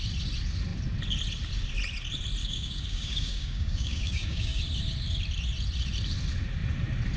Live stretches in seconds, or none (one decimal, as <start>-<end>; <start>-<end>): 0.0-2.4; 4.6-7.2

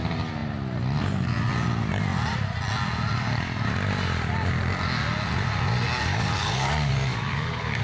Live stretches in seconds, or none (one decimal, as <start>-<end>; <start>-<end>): 0.0-6.1

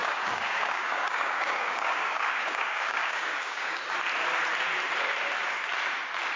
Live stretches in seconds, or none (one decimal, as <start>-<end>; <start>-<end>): 3.8-6.4

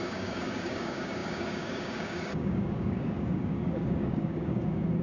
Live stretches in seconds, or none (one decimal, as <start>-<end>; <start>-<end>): none

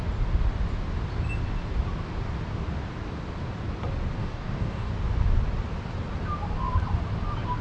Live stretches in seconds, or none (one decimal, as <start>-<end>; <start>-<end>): 0.0-4.2; 4.9-7.6

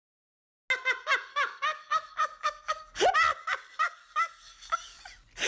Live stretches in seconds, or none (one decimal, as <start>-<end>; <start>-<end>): 0.0-1.3; 3.0-4.0; 5.0-5.5